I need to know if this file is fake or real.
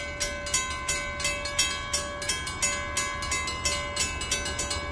real